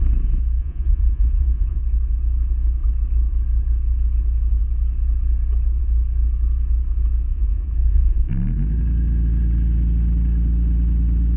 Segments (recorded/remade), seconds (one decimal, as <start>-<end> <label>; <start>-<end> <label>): 0.0-0.6 recorded; 0.6-1.8 remade; 1.8-7.3 recorded; 7.3-8.3 remade; 8.3-11.4 recorded